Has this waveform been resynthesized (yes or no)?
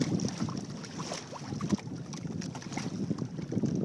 no